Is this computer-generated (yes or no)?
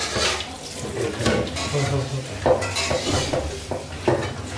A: no